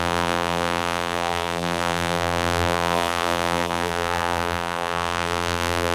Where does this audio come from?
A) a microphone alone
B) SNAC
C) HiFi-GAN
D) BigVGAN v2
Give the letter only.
D